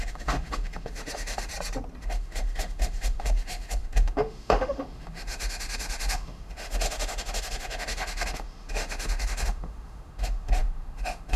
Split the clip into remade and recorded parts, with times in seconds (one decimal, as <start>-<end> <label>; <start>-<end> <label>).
0.0-1.5 remade; 1.5-2.0 recorded; 2.0-11.4 remade